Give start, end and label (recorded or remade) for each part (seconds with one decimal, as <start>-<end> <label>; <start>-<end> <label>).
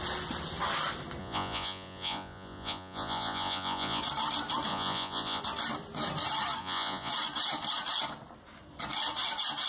0.0-1.2 recorded; 1.2-4.0 remade; 4.0-4.7 recorded; 4.7-5.4 remade; 5.4-6.6 recorded; 6.6-7.1 remade; 7.1-9.7 recorded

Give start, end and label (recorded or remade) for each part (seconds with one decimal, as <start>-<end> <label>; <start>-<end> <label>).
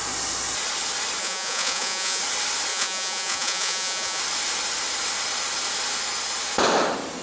0.0-1.2 recorded; 1.2-2.2 remade; 2.2-2.7 recorded; 2.7-4.2 remade; 4.2-7.2 recorded